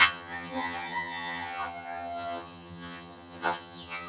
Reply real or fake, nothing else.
fake